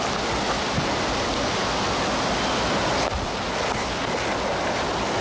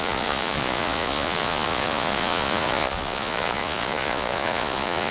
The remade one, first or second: second